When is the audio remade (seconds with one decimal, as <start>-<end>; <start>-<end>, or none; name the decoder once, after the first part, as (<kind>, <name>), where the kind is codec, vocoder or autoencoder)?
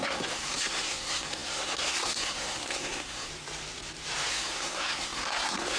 0.0-3.3 (codec, SNAC); 4.3-5.8